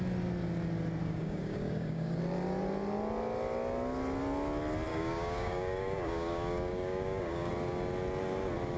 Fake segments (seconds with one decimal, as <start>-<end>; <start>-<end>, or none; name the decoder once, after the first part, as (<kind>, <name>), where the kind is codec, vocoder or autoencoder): 1.0-2.2 (codec, DAC); 4.9-7.5